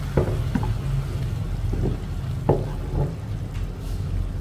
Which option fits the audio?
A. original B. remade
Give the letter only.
A